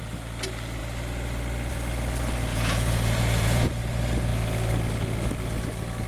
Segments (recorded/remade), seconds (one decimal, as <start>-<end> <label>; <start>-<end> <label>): 0.0-2.5 recorded; 2.5-3.8 remade; 3.8-6.1 recorded